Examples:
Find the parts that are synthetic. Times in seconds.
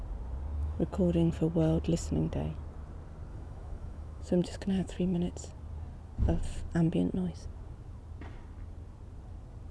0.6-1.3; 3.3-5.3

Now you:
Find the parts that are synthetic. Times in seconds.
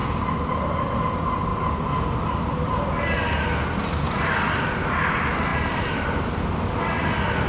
1.5-5.1; 5.5-7.1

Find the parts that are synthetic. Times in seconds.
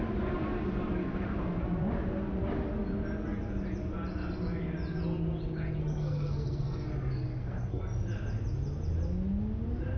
1.0-1.6; 5.8-7.8